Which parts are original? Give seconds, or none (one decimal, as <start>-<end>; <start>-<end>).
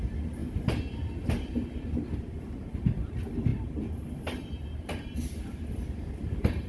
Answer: 0.0-0.4; 3.1-3.5; 5.4-6.7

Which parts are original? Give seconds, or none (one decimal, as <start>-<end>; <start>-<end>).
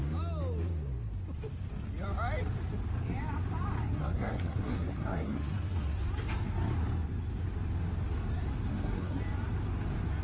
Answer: 0.0-3.9; 6.0-8.7; 9.2-10.2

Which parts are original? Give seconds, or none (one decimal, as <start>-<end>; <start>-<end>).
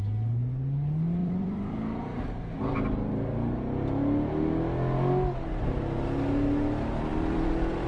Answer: 0.0-1.2; 1.7-7.1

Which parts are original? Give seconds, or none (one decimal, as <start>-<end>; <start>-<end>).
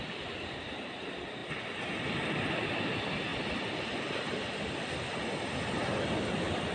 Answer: 0.0-6.7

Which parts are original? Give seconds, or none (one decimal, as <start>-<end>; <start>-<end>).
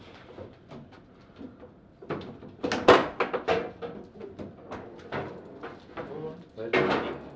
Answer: 0.0-7.4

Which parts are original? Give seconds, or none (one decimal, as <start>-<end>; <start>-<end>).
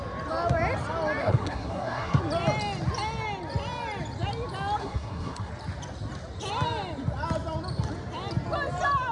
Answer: 0.0-1.2; 2.2-4.8; 5.5-9.1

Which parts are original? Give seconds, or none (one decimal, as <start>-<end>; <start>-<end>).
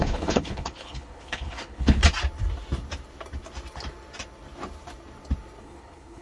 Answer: 2.0-5.6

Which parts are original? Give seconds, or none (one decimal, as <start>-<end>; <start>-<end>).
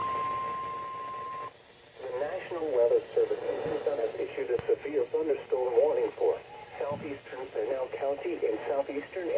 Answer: 0.0-9.4